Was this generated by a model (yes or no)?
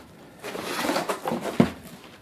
no